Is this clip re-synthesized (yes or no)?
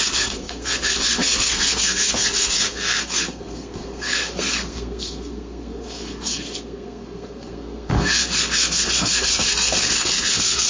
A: yes